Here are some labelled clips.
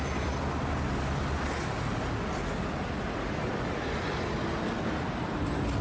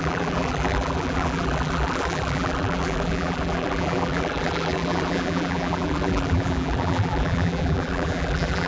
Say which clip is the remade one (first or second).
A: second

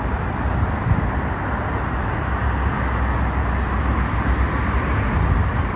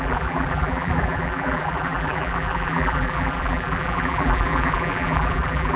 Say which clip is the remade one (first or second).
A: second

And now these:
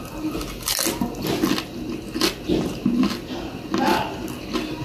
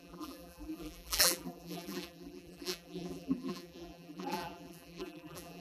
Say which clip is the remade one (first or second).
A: second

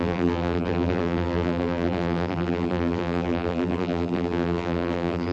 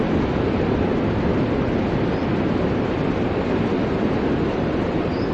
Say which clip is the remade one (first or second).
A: first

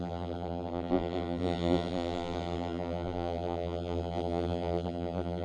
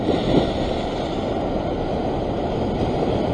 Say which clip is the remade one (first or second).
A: first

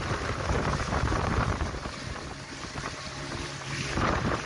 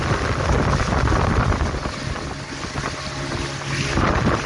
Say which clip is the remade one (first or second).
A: first